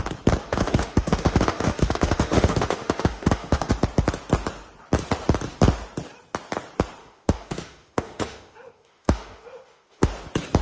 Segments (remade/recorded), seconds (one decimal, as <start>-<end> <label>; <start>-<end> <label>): 0.0-0.4 recorded; 0.4-3.7 remade; 3.7-7.0 recorded; 7.0-10.1 remade; 10.1-10.6 recorded